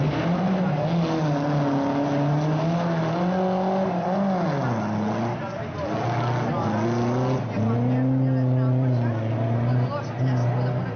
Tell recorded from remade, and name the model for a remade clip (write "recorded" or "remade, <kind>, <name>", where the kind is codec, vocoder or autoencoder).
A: recorded